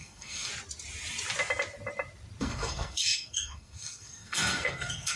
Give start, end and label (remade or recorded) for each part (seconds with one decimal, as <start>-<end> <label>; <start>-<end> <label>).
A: 0.0-0.5 remade; 0.5-2.4 recorded; 2.4-5.2 remade